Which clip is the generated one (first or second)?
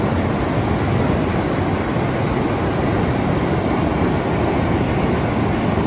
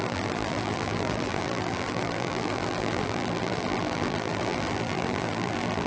second